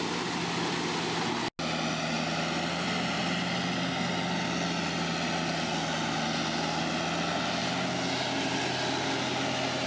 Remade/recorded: recorded